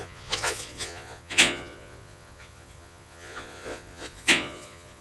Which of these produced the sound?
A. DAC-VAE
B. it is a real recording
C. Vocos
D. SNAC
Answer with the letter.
C